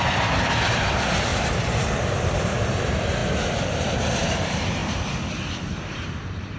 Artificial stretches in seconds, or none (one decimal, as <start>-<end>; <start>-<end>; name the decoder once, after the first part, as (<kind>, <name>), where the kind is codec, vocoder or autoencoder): 0.0-3.2 (vocoder, BigVGAN v2); 4.1-4.8; 5.5-6.6